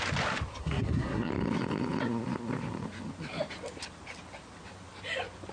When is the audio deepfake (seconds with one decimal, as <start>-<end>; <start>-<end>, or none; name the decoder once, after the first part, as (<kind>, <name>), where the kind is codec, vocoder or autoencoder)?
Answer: 0.6-1.3 (codec, SNAC)

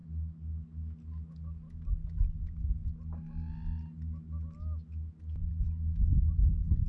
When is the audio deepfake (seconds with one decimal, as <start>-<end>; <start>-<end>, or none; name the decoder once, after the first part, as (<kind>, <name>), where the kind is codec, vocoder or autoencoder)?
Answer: none

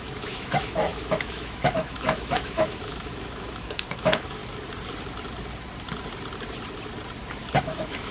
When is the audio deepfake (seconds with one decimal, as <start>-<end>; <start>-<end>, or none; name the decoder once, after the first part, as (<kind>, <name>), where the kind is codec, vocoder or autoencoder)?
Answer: 0.0-4.4 (autoencoder, DAC-VAE); 7.6-8.1

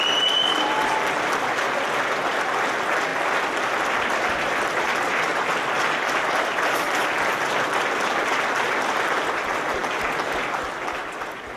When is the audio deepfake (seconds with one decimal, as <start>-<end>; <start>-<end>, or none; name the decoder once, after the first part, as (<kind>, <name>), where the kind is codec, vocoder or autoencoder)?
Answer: 0.0-3.1 (vocoder, BigVGAN v2); 3.8-5.3; 6.0-11.6

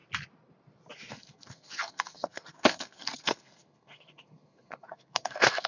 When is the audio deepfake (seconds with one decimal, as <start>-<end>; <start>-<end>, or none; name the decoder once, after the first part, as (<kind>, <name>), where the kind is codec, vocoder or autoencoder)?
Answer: 1.1-5.7 (codec, SNAC)

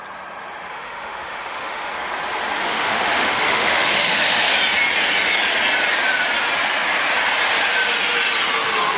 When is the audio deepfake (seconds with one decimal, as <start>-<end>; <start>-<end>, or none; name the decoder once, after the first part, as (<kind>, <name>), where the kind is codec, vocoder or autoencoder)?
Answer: 0.7-1.9 (autoencoder, DAC-VAE); 2.6-4.5

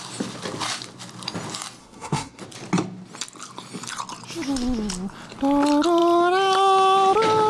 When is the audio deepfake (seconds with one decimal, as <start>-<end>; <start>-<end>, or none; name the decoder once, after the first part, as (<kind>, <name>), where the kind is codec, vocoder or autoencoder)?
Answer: 1.8-2.4 (codec, SNAC)